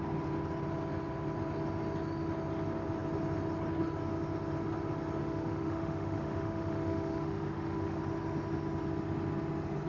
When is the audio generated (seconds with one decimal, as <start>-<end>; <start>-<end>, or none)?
5.2-8.0